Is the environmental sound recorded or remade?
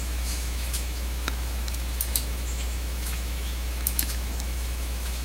remade